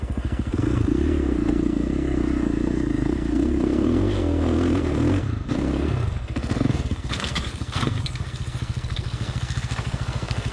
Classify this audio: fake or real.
fake